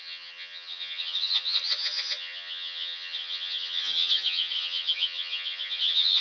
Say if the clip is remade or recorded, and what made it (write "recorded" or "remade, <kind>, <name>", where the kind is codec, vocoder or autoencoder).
remade, vocoder, HiFi-GAN